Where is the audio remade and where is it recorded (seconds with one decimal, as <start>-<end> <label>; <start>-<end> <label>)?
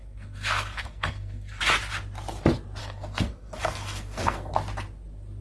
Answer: 0.0-1.6 remade; 1.6-2.8 recorded; 2.8-4.5 remade; 4.5-5.4 recorded